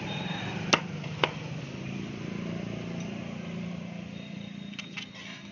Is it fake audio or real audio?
real